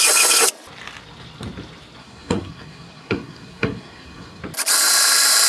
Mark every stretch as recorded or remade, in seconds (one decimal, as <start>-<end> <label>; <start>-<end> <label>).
0.0-2.0 recorded; 2.0-4.4 remade; 4.4-5.5 recorded